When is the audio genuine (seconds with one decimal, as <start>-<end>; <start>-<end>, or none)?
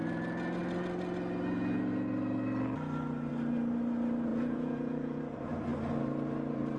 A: 0.0-4.3; 5.2-6.8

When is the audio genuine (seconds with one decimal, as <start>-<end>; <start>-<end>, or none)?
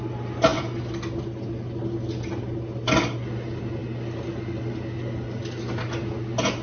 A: 0.0-6.6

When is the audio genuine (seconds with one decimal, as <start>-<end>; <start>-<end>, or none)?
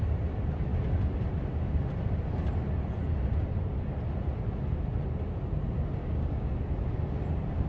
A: 0.0-6.0; 6.5-7.7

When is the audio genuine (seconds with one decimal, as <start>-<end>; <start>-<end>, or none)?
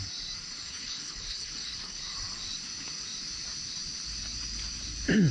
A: 0.0-0.7; 2.0-5.3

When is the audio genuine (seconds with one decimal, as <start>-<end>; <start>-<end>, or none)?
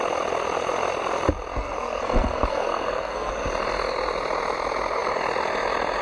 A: 0.0-1.5; 3.3-6.0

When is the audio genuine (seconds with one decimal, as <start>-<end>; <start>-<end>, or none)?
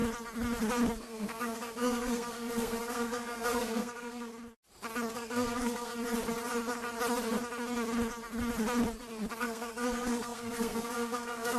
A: 0.0-1.0; 4.3-5.1; 5.9-9.4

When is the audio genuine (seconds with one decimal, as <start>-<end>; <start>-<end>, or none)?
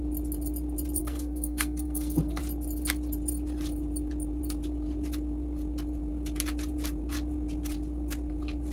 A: 0.0-1.0; 2.4-8.7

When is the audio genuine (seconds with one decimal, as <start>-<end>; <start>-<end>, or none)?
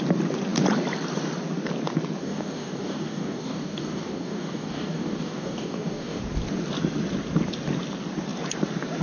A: 0.0-2.2; 6.2-9.0